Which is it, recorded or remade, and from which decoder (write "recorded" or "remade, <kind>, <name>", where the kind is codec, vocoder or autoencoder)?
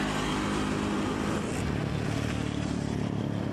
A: recorded